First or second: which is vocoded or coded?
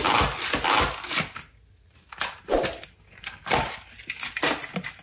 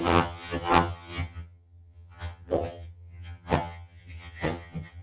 second